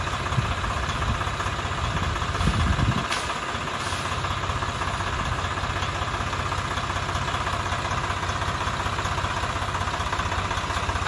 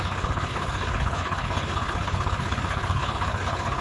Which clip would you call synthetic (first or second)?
second